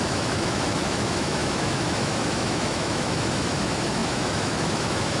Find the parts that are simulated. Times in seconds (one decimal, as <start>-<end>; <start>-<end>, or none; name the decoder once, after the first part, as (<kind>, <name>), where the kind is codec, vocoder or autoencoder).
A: 0.0-5.2 (autoencoder, DAC-VAE)